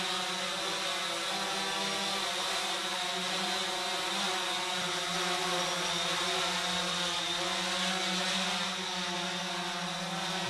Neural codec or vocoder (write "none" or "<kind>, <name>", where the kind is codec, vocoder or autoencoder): none